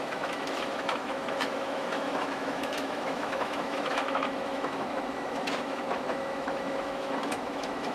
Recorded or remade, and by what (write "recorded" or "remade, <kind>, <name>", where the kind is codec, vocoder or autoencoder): remade, autoencoder, DAC-VAE